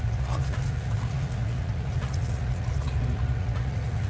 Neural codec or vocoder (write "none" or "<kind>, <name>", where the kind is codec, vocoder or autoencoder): vocoder, Vocos